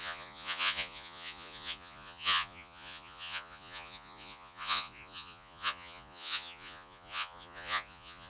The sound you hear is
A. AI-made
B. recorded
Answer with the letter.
A